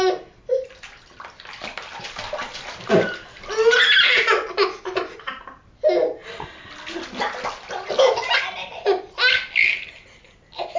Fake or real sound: real